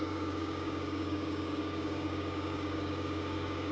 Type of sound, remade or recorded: remade